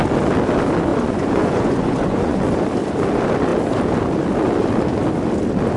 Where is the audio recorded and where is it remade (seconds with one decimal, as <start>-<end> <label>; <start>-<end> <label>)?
0.0-0.9 recorded; 0.9-2.4 remade; 2.4-5.8 recorded